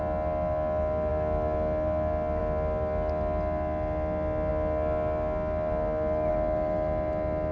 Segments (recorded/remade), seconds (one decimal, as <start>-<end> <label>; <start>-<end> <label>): 0.0-7.5 recorded